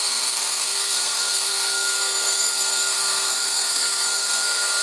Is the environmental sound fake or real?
fake